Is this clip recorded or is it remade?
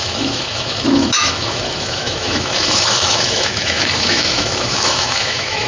remade